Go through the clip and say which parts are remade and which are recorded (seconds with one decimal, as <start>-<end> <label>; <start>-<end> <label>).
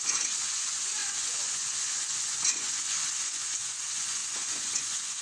0.0-5.2 remade